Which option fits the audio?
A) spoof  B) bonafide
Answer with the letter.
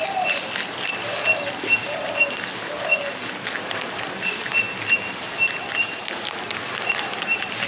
B